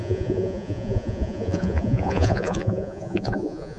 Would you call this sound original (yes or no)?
no